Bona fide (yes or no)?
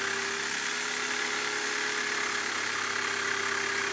yes